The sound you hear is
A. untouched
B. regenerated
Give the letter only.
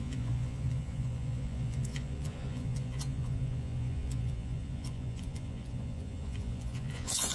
B